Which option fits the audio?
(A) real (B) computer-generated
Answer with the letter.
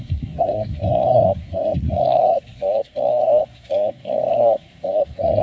B